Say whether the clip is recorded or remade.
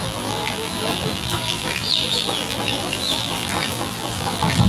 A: remade